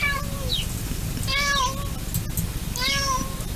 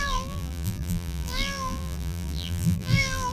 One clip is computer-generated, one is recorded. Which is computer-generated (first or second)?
second